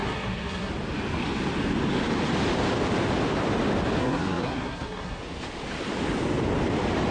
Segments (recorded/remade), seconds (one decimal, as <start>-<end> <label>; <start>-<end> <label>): 0.0-0.7 remade; 0.7-4.0 recorded; 4.0-5.2 remade; 5.2-7.1 recorded